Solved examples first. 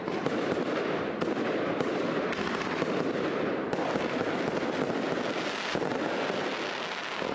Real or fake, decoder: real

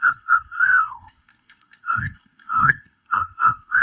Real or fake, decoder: fake, codec, SNAC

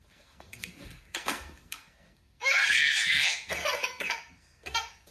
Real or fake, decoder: fake, codec, SNAC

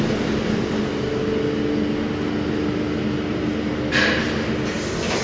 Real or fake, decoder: real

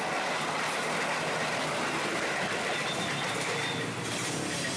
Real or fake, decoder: real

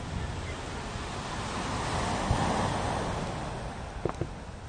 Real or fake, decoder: real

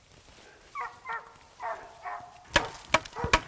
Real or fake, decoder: real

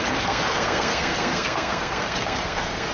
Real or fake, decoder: fake, codec, SNAC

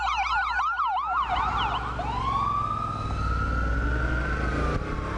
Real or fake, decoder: real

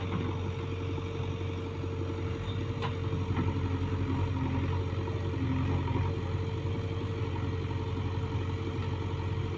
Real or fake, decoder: real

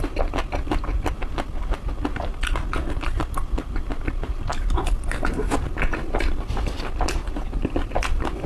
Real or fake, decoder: real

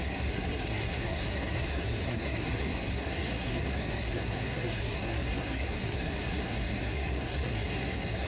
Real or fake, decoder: fake, codec, SNAC